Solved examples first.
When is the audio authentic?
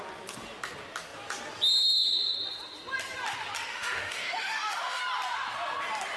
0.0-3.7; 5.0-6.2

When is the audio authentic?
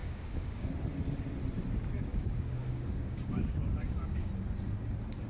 0.7-2.1; 4.3-5.3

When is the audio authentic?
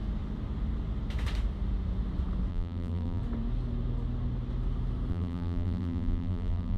0.0-2.5; 3.2-5.1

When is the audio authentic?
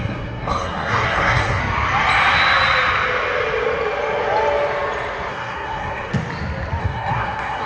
1.6-5.3; 6.1-6.8